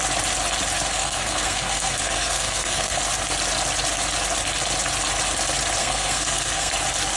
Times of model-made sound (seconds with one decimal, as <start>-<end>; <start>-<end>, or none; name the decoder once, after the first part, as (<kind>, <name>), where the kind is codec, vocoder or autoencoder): 1.0-3.0 (codec, SNAC); 5.8-6.7